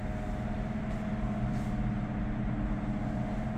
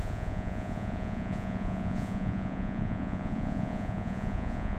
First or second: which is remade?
second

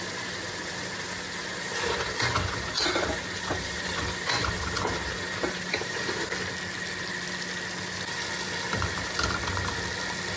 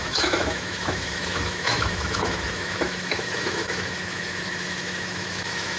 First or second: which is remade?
second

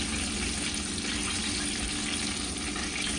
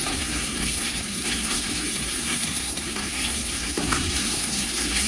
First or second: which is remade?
second